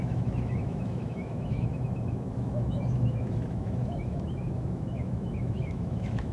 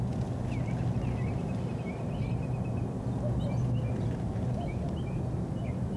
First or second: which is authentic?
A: second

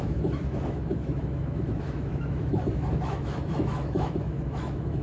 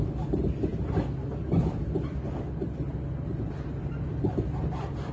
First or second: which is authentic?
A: second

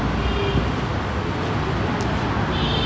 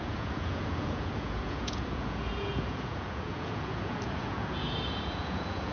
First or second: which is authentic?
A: first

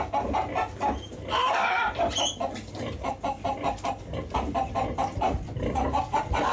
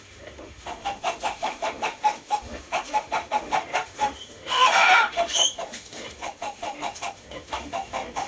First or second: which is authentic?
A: first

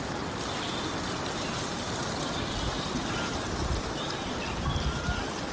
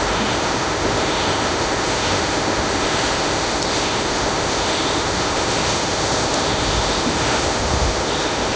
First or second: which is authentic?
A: first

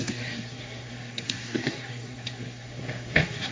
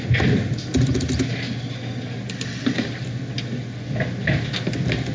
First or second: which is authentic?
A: second